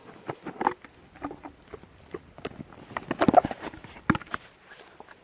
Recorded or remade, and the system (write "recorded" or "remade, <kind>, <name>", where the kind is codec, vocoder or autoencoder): recorded